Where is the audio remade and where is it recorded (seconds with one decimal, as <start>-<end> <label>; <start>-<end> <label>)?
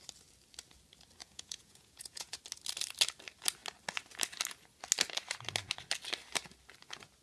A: 0.0-1.2 recorded; 1.2-2.4 remade; 2.4-7.2 recorded